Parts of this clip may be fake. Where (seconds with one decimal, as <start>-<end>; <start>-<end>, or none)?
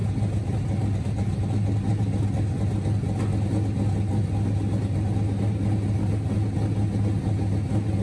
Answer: none